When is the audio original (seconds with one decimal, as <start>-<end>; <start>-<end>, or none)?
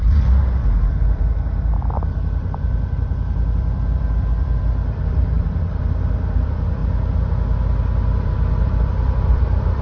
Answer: 6.8-8.1